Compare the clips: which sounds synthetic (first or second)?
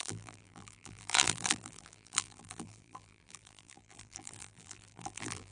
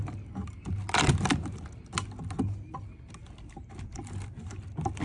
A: first